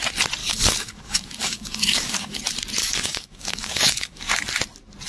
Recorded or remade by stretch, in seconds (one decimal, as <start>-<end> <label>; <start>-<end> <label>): 0.0-0.4 recorded; 0.4-2.4 remade; 2.4-2.8 recorded; 2.8-4.4 remade; 4.4-5.1 recorded